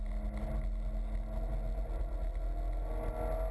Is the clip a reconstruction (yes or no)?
no